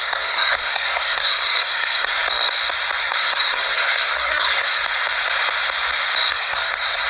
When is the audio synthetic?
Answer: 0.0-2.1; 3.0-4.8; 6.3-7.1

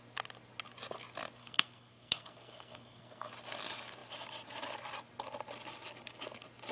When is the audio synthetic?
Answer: 1.4-3.3

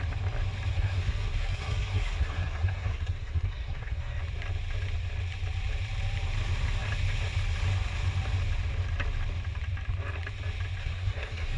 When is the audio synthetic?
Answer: 0.7-4.2; 10.8-11.6

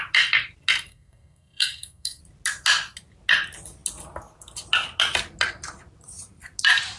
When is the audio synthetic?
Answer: 0.9-2.2

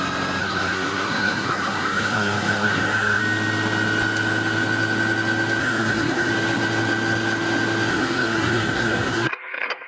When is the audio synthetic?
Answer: 0.4-3.2; 5.6-6.3; 7.9-9.9

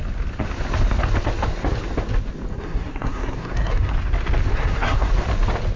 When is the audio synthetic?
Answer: 2.5-3.9; 4.5-5.1